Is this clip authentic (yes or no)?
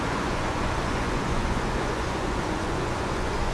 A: no